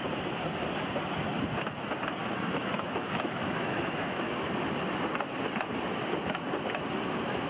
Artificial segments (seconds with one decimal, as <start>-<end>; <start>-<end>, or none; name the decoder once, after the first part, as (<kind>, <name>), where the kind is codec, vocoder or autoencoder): 2.2-4.5 (autoencoder, DAC-VAE)